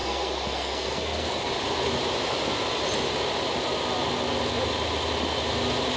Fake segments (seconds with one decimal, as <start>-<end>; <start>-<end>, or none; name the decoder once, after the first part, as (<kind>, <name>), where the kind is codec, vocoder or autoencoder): 0.0-1.5 (codec, SNAC)